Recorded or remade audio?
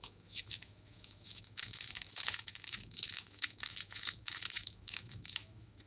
remade